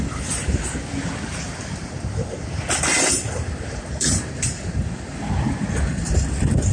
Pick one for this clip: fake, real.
real